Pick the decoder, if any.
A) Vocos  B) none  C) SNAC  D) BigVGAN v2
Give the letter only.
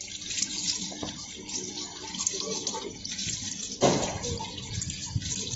B